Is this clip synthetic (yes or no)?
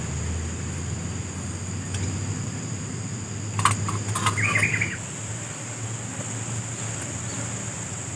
no